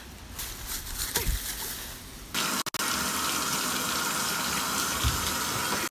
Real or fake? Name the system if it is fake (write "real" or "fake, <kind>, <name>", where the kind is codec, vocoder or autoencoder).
real